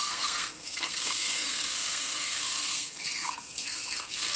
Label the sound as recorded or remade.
remade